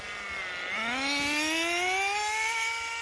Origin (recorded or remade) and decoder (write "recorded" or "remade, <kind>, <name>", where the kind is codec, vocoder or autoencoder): recorded